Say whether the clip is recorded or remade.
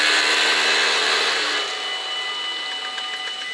recorded